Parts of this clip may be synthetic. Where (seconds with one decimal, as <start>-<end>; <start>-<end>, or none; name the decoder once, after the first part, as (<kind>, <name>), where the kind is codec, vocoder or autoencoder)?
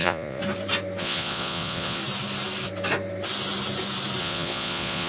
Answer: 0.0-0.4 (vocoder, Vocos); 1.0-2.0; 4.2-5.1